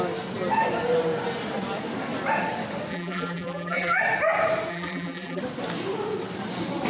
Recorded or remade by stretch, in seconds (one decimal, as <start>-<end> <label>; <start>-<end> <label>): 0.0-2.9 recorded; 2.9-4.0 remade; 4.0-4.7 recorded; 4.7-5.4 remade; 5.4-6.9 recorded